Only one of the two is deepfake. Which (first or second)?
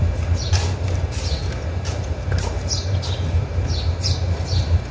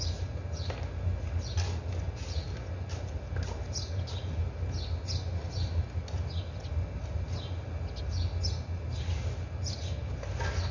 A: first